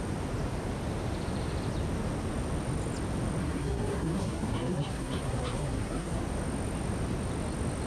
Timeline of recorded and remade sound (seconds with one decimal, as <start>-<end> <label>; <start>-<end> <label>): 0.0-3.4 recorded; 3.4-6.2 remade; 6.2-7.9 recorded